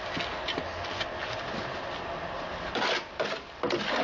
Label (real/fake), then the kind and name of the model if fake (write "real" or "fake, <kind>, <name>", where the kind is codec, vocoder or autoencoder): real